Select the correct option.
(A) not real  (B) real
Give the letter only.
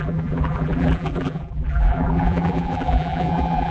A